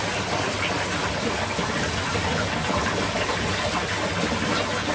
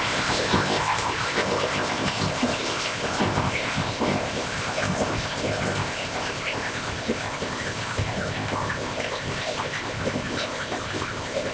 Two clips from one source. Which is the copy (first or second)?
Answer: second